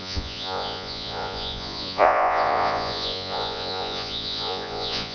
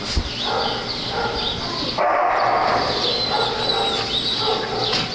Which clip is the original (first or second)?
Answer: second